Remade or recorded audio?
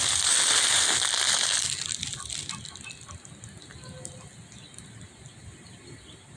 recorded